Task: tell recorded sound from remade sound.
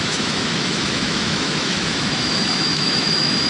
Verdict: remade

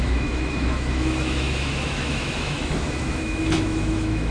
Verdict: remade